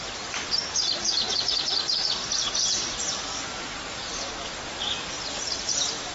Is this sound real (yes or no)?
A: yes